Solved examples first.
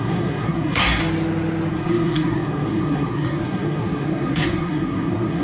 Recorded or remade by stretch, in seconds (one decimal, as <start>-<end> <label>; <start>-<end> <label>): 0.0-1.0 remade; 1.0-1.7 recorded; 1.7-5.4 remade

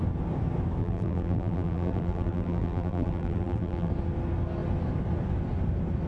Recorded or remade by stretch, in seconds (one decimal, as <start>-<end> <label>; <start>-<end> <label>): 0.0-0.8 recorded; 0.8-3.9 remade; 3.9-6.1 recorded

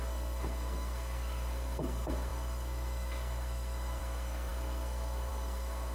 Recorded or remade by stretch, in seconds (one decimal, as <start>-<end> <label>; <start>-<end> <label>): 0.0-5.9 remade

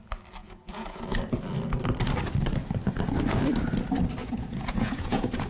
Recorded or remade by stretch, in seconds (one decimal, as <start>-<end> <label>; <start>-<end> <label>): 0.0-0.4 recorded; 0.4-1.0 remade; 1.0-4.2 recorded; 4.2-5.5 remade

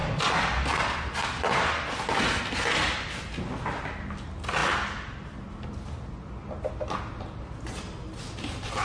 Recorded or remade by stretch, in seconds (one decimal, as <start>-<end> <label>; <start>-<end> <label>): 0.0-8.8 recorded

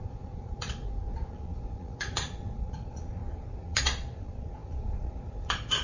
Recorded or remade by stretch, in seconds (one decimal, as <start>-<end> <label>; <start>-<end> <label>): 0.0-5.8 remade